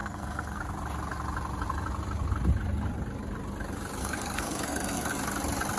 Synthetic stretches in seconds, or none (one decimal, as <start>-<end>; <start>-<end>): 0.0-0.6; 4.0-5.1